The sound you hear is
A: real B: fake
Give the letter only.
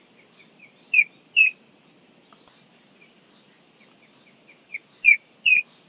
A